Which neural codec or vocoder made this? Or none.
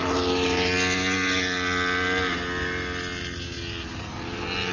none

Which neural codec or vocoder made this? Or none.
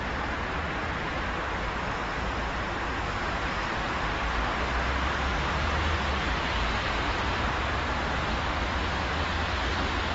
vocoder, BigVGAN v2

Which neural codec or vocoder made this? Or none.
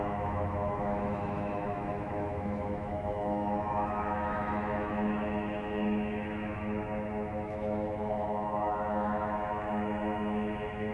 autoencoder, DAC-VAE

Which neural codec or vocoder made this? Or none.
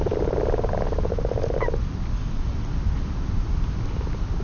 none